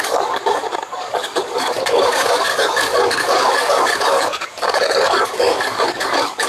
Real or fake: fake